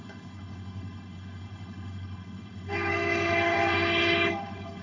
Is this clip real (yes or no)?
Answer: no